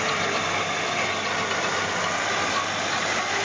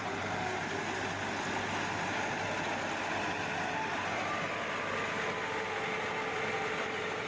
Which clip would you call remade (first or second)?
first